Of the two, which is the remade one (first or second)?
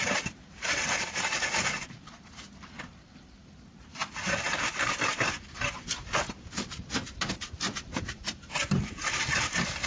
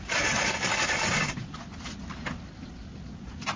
first